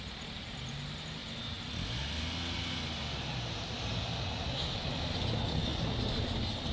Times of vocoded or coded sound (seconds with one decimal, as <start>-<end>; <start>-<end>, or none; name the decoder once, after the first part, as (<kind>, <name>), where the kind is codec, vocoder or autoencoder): none